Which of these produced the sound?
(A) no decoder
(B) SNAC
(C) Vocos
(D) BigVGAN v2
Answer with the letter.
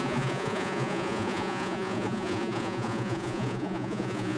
C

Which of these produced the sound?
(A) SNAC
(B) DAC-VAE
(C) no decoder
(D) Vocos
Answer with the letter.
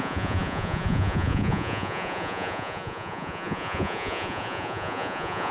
D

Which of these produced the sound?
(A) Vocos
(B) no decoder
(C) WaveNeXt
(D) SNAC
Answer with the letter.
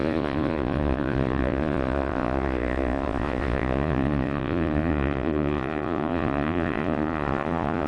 A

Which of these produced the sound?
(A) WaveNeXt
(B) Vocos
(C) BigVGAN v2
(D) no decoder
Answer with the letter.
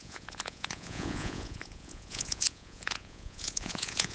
B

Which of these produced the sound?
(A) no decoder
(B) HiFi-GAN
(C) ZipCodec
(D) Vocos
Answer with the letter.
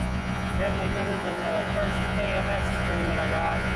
D